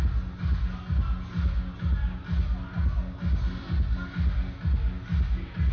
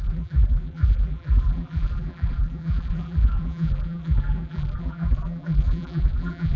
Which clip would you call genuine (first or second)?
first